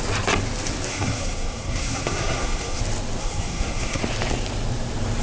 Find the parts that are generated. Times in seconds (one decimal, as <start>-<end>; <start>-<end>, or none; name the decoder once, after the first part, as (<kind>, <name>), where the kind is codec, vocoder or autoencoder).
0.9-2.8 (codec, SNAC); 3.2-4.0